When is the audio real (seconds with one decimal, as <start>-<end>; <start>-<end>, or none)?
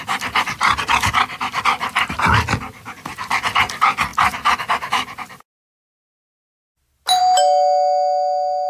0.0-8.7